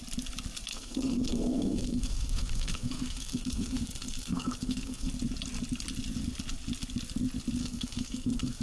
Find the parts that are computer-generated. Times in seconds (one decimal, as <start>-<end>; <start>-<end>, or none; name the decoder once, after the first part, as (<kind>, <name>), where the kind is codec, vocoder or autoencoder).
0.7-5.1 (codec, SNAC); 7.6-8.6